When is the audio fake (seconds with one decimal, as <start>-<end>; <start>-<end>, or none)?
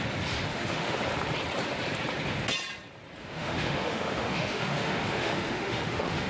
0.5-1.0; 3.2-6.3